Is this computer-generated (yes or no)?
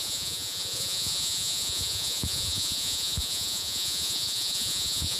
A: yes